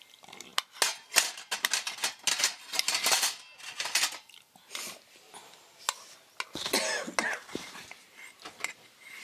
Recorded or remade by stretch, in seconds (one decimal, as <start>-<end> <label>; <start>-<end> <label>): 0.0-7.2 recorded; 7.2-9.2 remade